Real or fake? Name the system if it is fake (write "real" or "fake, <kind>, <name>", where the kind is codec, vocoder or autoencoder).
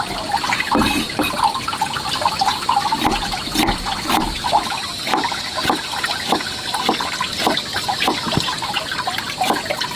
fake, vocoder, BigVGAN v2